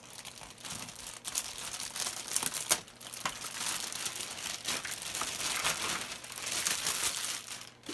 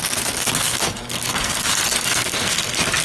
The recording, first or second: first